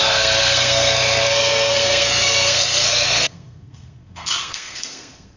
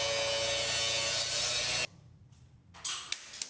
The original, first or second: second